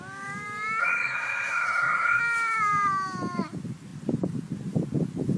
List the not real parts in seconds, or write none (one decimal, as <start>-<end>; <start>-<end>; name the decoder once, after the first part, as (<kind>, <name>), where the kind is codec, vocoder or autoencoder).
0.8-2.2 (codec, SNAC)